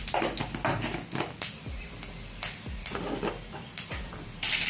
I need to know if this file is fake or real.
real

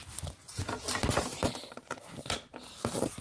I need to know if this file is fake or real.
fake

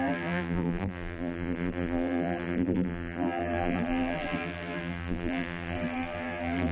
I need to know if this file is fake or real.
fake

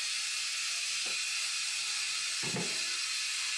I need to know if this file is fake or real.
real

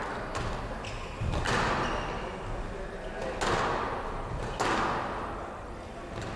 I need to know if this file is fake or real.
real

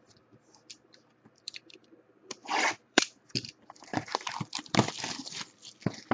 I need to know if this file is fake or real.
fake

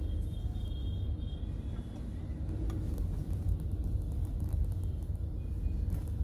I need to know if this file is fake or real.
real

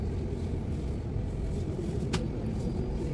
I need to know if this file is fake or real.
real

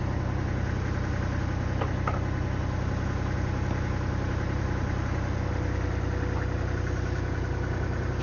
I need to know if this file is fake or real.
real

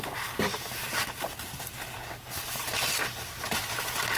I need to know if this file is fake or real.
real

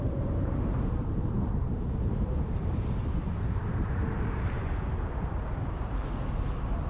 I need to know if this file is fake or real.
fake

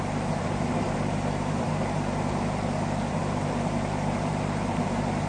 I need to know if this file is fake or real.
fake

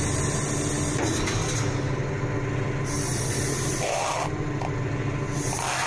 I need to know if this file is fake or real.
real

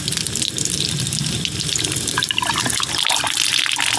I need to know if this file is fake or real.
fake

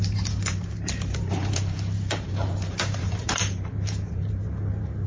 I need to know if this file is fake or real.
fake